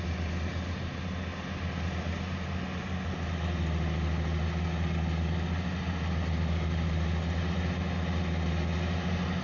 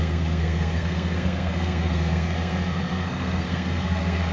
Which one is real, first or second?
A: first